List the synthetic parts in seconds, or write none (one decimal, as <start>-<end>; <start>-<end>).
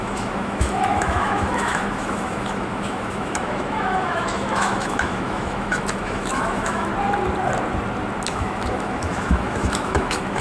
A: 0.0-6.9; 8.3-10.4